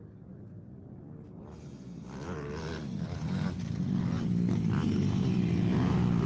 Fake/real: real